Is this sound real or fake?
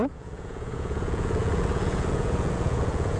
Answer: fake